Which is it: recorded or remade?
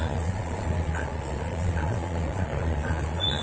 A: remade